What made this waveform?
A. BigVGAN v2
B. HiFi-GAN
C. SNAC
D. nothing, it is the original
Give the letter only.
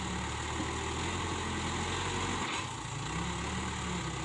D